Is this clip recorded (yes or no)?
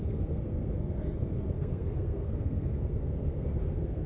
no